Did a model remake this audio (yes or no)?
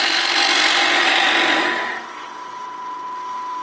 no